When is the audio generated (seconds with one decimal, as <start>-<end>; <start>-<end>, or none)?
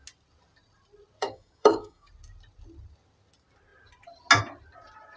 1.2-2.1